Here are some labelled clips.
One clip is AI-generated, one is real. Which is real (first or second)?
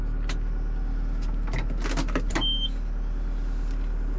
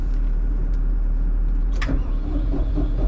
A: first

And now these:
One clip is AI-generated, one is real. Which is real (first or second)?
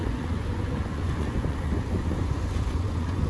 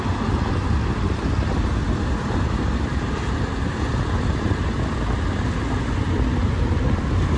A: second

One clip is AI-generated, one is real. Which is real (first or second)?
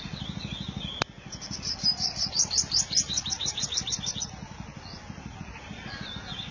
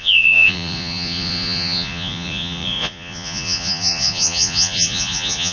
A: first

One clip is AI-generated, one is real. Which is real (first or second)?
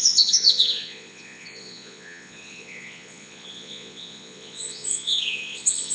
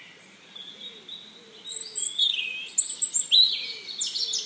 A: second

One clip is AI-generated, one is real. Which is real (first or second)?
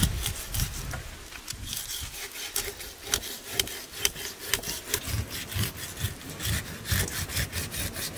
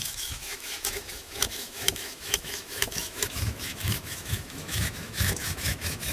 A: first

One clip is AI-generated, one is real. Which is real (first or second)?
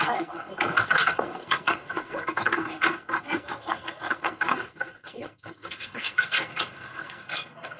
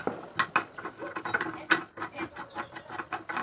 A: second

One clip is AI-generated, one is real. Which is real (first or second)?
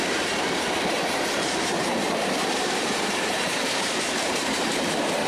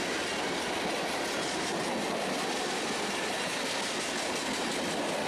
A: second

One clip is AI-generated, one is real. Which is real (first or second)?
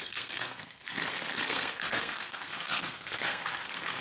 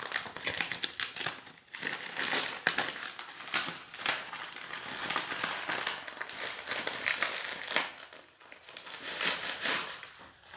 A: second